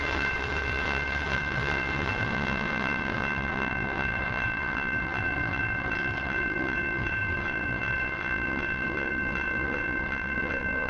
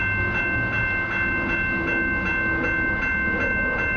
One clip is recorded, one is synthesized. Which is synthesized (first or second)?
first